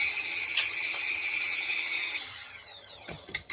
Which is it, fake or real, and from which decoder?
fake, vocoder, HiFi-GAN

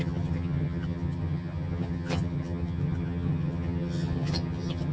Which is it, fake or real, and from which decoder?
fake, vocoder, HiFi-GAN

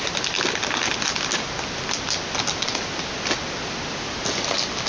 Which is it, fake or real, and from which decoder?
real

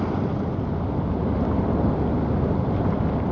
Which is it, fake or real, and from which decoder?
real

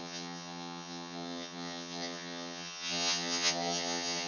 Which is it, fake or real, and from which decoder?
fake, vocoder, HiFi-GAN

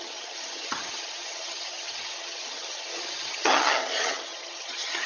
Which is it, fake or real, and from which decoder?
fake, vocoder, HiFi-GAN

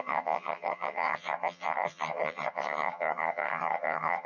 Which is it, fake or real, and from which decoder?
fake, vocoder, HiFi-GAN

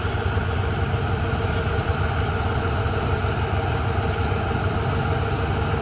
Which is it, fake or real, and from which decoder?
real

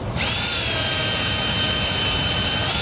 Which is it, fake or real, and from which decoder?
real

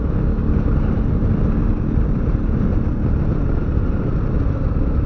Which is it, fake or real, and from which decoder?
real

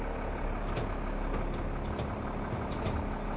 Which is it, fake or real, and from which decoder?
real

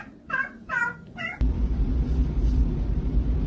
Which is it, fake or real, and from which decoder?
real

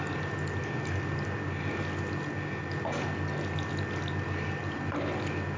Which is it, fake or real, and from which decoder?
real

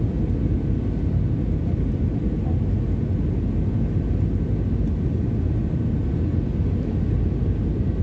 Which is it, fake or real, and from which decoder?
real